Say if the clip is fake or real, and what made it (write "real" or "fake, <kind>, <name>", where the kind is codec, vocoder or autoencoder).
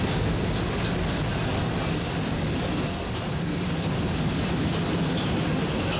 real